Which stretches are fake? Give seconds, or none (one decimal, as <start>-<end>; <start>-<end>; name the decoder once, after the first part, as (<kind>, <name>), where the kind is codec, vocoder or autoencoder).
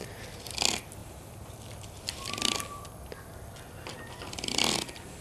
none